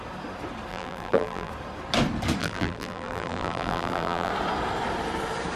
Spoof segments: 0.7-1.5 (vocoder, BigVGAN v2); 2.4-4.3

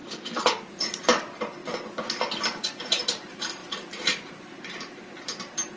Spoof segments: 0.0-1.6 (vocoder, BigVGAN v2); 2.8-5.8

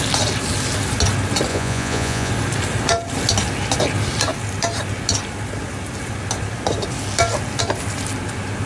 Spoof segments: 1.5-2.3 (vocoder, Vocos)